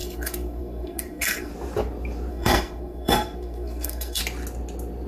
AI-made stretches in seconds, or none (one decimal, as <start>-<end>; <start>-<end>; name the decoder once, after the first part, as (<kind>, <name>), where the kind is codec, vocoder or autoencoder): 0.0-1.5 (codec, SNAC); 2.3-4.2